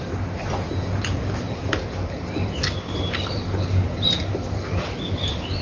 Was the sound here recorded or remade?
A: recorded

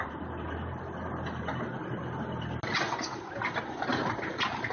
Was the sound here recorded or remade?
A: recorded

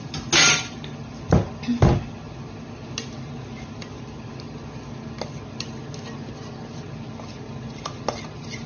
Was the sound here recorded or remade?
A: recorded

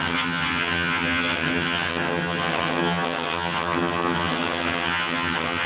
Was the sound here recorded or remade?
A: remade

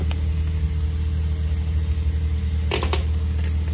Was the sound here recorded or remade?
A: recorded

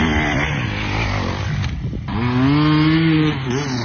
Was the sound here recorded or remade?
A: recorded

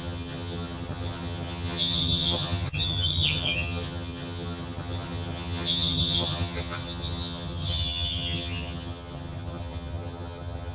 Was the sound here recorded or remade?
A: remade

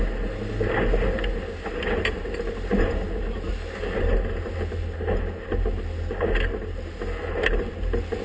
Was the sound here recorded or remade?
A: recorded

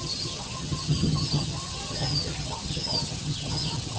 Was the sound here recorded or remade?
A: remade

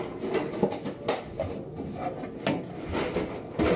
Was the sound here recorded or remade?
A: recorded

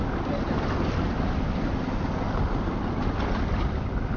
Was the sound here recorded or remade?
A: recorded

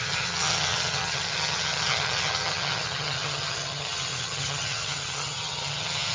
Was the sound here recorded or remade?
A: remade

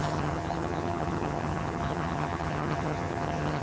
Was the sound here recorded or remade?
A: remade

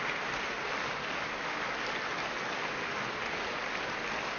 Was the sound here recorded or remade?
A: recorded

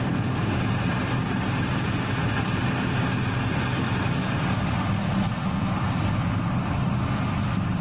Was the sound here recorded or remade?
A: recorded